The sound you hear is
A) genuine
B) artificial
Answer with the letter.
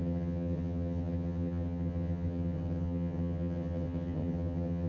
B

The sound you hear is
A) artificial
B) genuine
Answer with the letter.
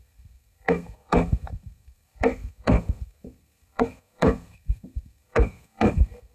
A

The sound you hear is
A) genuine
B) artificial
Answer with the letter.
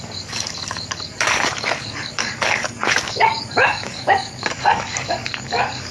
B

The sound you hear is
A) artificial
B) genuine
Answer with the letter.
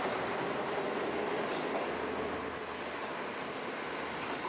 B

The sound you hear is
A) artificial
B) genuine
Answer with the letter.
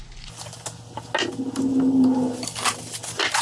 B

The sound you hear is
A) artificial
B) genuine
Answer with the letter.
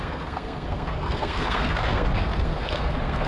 A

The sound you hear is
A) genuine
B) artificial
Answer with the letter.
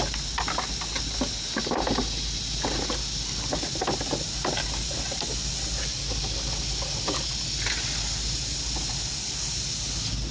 A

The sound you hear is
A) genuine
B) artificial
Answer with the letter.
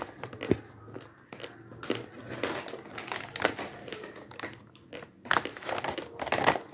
A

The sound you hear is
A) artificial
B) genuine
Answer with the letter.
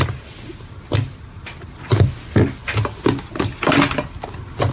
B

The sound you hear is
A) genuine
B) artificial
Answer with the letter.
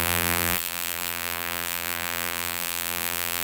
B